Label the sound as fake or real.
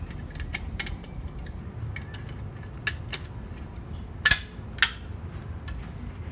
real